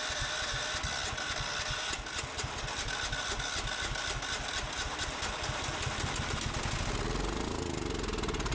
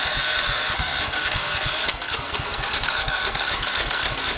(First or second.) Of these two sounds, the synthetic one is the second